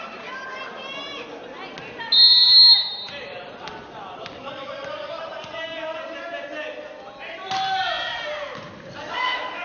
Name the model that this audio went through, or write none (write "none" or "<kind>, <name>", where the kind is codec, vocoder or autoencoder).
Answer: none